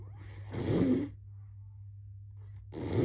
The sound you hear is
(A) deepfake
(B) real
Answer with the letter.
B